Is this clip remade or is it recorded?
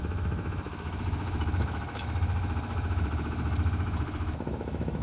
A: remade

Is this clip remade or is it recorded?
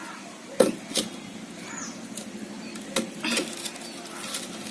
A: recorded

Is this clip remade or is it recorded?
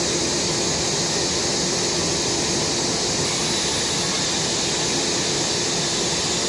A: recorded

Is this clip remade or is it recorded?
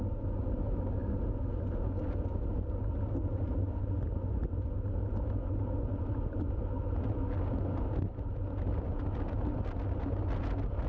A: recorded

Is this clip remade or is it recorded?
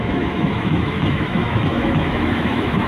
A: remade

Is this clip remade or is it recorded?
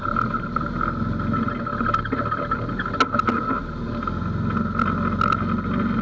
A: recorded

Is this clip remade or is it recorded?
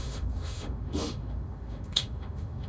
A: remade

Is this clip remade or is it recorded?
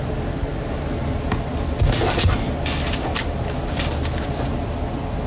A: recorded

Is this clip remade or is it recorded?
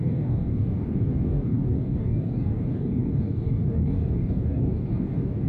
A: remade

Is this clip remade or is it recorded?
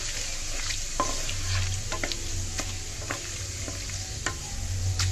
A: recorded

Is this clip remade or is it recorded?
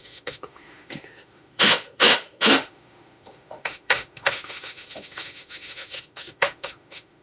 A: remade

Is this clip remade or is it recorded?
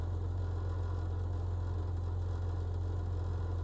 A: recorded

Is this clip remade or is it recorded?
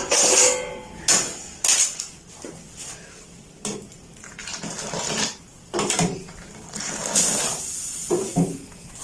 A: recorded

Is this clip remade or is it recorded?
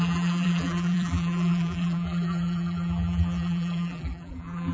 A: remade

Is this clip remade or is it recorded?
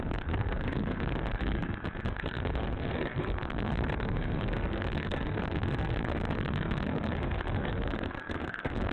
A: remade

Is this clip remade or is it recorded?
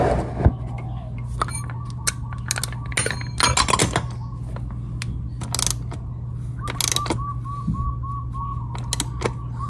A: recorded